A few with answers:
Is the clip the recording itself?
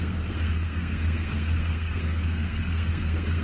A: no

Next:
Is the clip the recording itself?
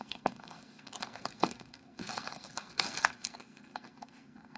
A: no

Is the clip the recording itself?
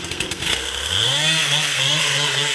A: no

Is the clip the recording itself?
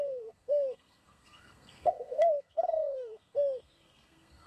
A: no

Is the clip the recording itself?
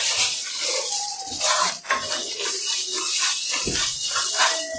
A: yes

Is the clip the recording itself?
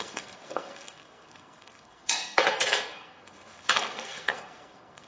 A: no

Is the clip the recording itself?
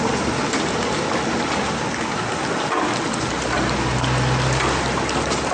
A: yes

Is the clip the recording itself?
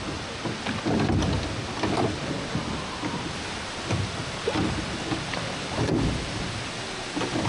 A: yes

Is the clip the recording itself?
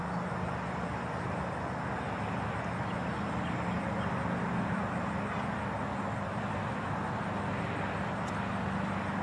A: yes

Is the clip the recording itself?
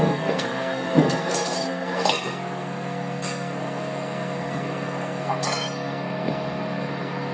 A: no